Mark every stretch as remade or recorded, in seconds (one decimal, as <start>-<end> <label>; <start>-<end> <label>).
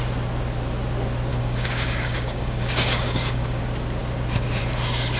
0.0-1.3 recorded; 1.3-3.6 remade; 3.6-5.2 recorded